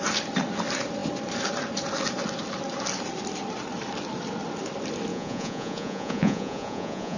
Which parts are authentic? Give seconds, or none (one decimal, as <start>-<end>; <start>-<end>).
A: 0.0-5.1